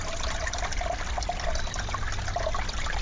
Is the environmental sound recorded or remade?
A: recorded